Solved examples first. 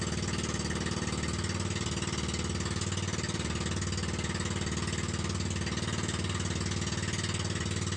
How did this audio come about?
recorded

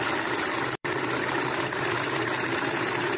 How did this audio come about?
remade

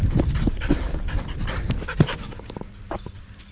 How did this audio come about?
recorded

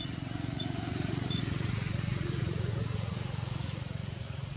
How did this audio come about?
remade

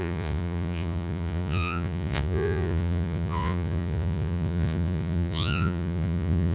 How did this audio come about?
remade